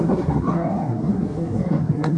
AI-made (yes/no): yes